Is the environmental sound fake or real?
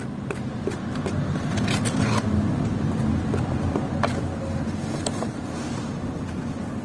real